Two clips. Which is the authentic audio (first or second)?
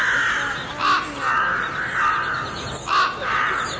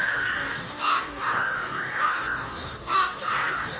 first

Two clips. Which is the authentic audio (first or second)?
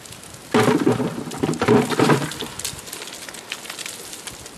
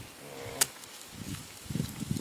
first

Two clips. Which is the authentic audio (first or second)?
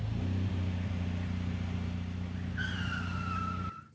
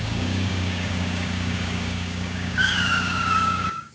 first